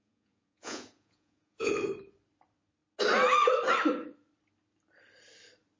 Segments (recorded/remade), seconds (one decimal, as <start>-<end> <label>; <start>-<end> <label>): 0.0-1.7 remade; 1.7-5.8 recorded